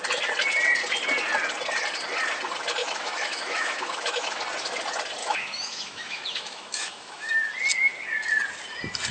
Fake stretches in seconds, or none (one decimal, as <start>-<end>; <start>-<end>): 2.8-4.4; 5.2-7.3